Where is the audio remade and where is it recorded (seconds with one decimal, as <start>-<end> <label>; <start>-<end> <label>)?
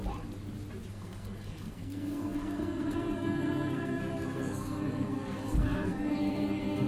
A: 0.0-0.9 recorded; 0.9-6.9 remade